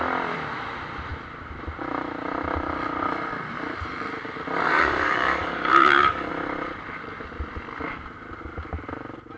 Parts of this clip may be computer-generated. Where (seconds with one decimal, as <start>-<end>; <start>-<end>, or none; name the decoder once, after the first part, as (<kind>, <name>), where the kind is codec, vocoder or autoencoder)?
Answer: 4.7-6.3 (codec, DAC)